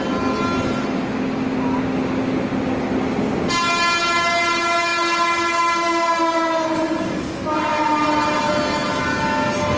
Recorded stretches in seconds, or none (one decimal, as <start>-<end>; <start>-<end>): 0.0-7.7; 8.5-9.8